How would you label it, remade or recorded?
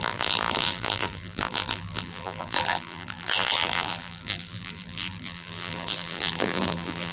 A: remade